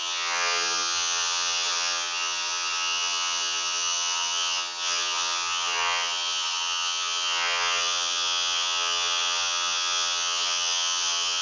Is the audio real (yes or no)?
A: no